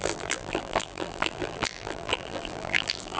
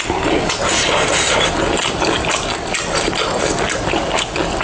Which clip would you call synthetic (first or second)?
first